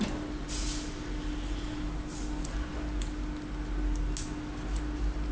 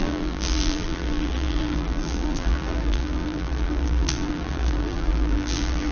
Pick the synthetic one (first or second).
second